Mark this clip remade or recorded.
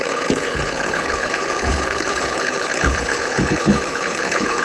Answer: remade